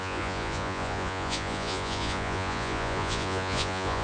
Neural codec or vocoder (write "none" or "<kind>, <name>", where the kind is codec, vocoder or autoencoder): vocoder, Vocos